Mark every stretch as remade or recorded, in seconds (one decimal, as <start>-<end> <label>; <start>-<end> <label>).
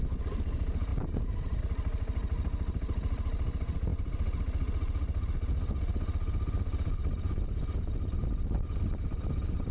0.0-9.7 recorded